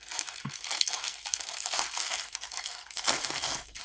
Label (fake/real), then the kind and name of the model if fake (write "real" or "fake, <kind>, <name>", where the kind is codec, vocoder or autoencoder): fake, codec, SNAC